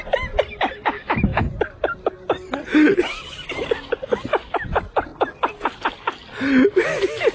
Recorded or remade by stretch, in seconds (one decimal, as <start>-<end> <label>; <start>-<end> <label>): 0.0-7.3 recorded